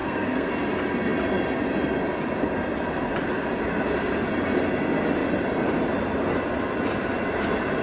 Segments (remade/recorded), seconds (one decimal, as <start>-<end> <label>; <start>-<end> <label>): 0.0-0.5 remade; 0.5-7.8 recorded